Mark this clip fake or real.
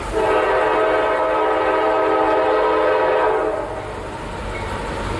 real